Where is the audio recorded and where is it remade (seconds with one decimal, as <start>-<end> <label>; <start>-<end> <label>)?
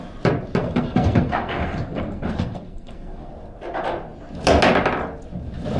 0.0-0.6 recorded; 0.6-3.3 remade; 3.3-5.8 recorded